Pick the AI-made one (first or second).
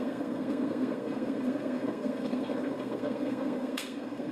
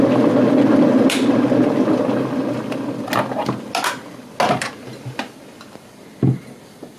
first